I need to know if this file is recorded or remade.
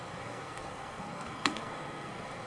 remade